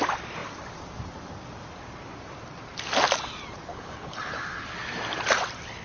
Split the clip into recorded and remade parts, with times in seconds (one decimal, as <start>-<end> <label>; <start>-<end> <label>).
0.0-3.7 recorded; 3.7-4.7 remade; 4.7-5.8 recorded